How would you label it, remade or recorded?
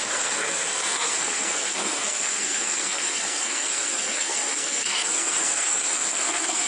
remade